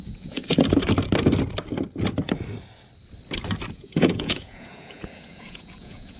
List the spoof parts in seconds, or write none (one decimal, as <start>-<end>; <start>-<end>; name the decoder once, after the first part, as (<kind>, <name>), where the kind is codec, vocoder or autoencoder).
0.0-0.4 (vocoder, Vocos); 3.7-6.2